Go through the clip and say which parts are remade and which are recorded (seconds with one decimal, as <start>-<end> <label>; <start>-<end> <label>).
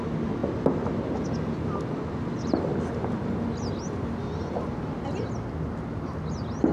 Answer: 0.0-6.7 recorded